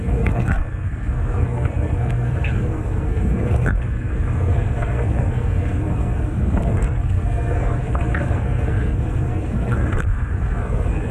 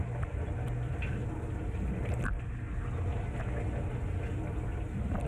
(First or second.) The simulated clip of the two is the first